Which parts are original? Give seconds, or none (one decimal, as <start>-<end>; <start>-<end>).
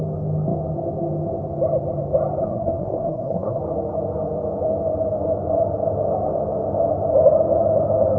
0.0-2.4; 3.6-8.2